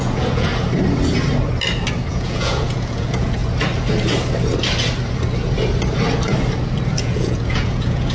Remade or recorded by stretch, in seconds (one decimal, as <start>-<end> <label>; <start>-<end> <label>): 0.0-0.5 remade; 0.5-2.1 recorded; 2.1-3.4 remade; 3.4-7.0 recorded; 7.0-8.1 remade